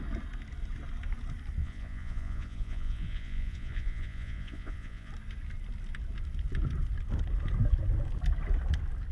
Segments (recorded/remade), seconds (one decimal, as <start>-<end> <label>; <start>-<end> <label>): 0.0-1.6 recorded; 1.6-5.1 remade; 5.1-9.1 recorded

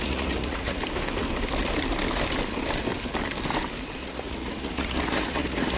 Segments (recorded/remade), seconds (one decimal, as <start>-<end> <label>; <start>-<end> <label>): 0.0-0.8 remade; 0.8-4.0 recorded; 4.0-5.8 remade

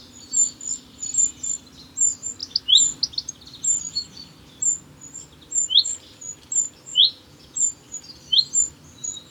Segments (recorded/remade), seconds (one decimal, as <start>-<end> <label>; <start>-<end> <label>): 0.0-6.9 recorded; 6.9-7.8 remade; 7.8-9.3 recorded

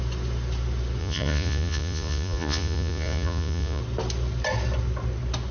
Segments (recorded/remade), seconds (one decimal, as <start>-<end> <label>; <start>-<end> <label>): 0.0-1.0 recorded; 1.0-3.8 remade; 3.8-5.5 recorded

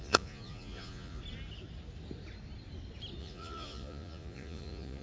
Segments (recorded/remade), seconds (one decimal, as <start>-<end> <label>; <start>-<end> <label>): 0.0-1.2 remade; 1.2-3.2 recorded; 3.2-5.0 remade

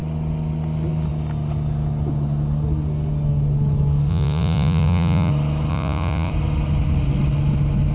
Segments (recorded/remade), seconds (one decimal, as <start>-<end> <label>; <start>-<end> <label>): 0.0-4.1 recorded; 4.1-5.3 remade; 5.3-5.7 recorded; 5.7-6.3 remade; 6.3-7.9 recorded

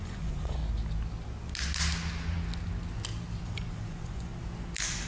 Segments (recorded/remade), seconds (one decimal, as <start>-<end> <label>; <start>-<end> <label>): 0.0-0.6 remade; 0.6-3.7 recorded; 3.7-4.3 remade; 4.3-5.1 recorded

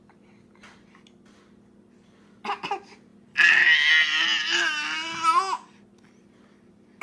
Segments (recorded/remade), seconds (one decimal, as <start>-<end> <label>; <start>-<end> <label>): 0.0-7.0 recorded